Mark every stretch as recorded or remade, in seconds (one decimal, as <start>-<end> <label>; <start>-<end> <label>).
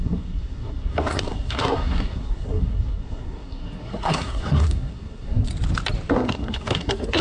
0.0-5.5 remade; 5.5-6.1 recorded; 6.1-7.2 remade